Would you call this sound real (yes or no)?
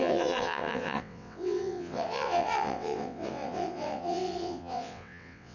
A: no